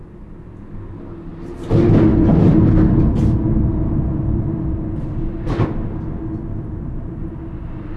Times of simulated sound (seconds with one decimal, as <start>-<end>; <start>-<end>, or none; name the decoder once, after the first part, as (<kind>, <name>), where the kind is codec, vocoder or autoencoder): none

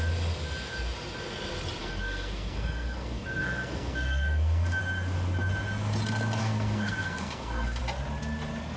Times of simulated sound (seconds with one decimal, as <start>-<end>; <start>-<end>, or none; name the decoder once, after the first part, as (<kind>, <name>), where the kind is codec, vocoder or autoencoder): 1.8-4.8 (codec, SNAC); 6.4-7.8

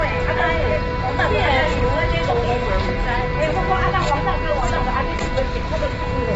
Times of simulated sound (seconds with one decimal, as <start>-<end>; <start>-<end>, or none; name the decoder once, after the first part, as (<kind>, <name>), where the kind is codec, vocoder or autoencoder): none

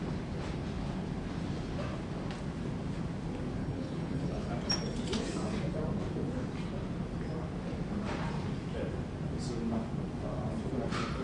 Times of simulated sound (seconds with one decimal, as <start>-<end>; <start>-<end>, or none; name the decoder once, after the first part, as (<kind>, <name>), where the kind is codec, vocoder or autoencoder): 3.6-4.5 (codec, HILCodec)

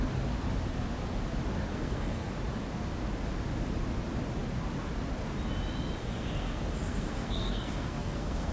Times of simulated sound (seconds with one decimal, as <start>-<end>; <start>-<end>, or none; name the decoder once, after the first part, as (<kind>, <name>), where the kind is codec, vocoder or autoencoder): 1.7-2.3 (codec, SNAC); 6.0-8.5